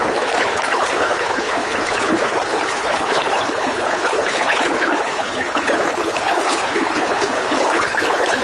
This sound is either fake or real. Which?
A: fake